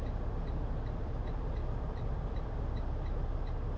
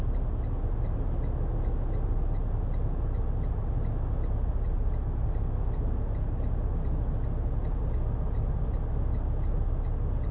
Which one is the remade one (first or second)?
first